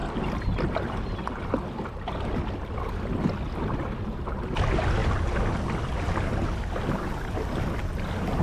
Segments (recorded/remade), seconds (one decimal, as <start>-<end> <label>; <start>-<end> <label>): 0.0-8.4 recorded